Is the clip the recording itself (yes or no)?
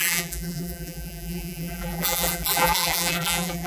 no